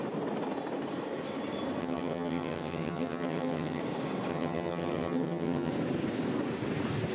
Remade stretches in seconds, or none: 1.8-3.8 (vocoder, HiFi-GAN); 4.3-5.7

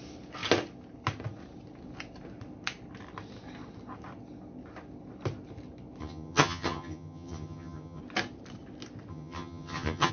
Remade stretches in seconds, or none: 6.0-8.0 (vocoder, HiFi-GAN); 9.1-10.1

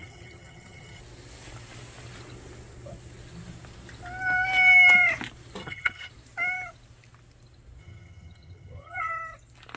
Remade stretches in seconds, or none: 0.0-1.0 (vocoder, HiFi-GAN); 5.6-6.1; 7.8-9.1

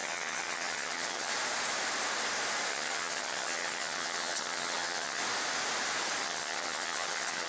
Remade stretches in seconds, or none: 0.0-1.3 (vocoder, HiFi-GAN); 2.7-5.2; 6.2-7.5

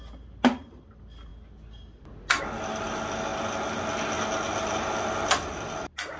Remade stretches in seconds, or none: none